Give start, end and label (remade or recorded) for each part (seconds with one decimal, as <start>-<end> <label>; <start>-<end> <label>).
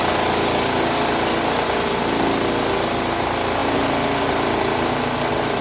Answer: 0.0-5.6 recorded